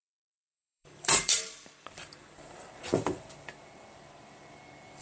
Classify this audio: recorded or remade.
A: remade